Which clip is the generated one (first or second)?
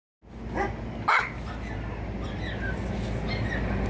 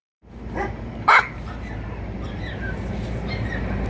second